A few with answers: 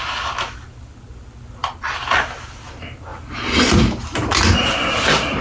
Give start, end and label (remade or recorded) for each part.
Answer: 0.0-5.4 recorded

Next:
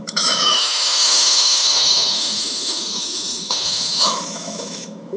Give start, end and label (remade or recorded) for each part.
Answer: 0.0-5.2 remade

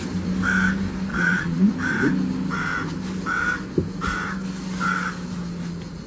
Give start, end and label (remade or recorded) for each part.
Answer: 0.0-1.1 recorded; 1.1-1.7 remade; 1.7-6.1 recorded